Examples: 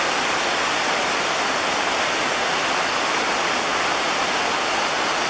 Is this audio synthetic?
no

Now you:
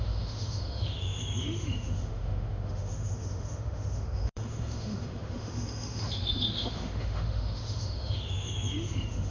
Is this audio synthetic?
yes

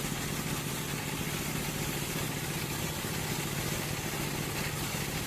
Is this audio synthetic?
no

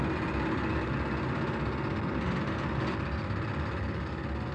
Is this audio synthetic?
no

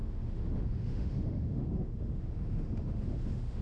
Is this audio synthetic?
yes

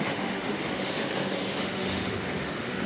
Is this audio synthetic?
yes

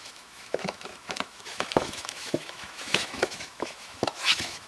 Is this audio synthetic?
yes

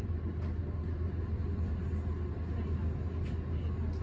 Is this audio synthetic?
no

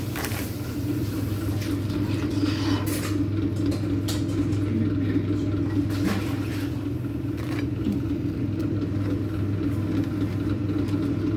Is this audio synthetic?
no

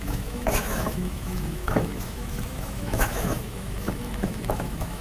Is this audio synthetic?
yes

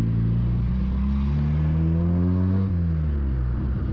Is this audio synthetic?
no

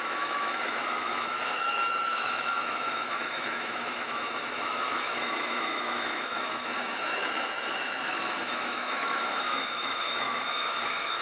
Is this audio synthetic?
yes